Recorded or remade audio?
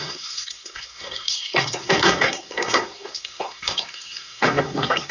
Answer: remade